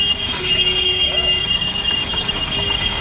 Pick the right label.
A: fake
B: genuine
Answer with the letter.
A